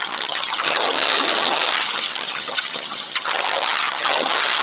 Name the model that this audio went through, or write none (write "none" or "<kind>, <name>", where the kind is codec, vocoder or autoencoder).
vocoder, HiFi-GAN